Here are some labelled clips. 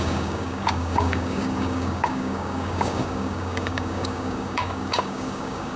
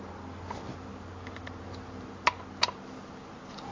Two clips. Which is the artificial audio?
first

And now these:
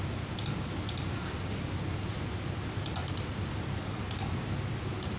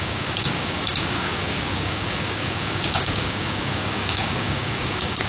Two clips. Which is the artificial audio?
second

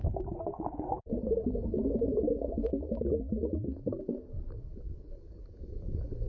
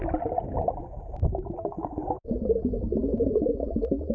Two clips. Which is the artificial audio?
first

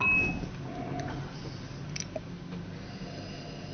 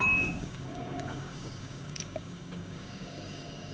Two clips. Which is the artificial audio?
second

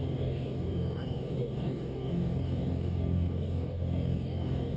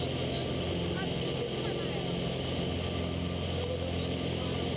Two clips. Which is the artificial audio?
first